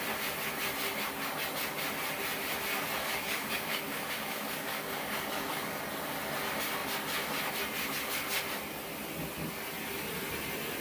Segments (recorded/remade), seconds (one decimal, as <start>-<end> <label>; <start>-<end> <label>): 0.0-2.7 recorded; 2.7-5.8 remade; 5.8-10.8 recorded